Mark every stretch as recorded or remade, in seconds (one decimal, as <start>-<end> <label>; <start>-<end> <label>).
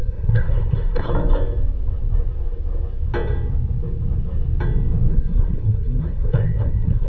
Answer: 0.0-1.1 remade; 1.1-5.1 recorded; 5.1-7.1 remade